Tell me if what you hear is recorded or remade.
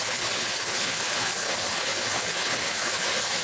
remade